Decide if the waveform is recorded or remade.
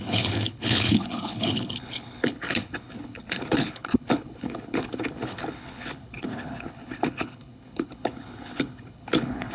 remade